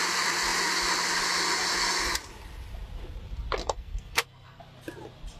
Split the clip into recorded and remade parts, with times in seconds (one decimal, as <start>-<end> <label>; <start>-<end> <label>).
0.0-3.6 recorded; 3.6-4.6 remade; 4.6-5.4 recorded